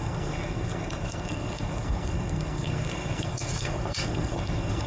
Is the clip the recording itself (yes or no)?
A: no